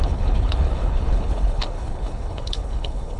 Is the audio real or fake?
fake